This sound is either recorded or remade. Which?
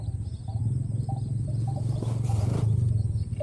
recorded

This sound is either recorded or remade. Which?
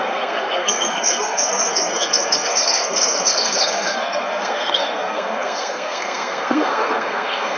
remade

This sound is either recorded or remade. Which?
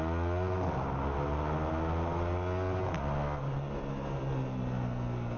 recorded